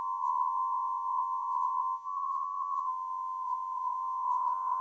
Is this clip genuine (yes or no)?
no